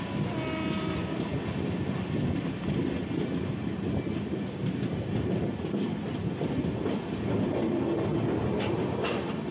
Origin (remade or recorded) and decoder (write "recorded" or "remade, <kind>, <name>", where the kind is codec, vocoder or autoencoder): recorded